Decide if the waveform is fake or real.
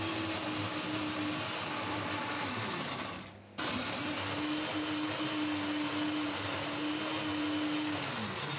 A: real